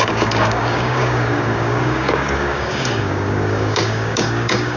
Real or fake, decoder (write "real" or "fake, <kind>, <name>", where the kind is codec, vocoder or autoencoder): fake, codec, DAC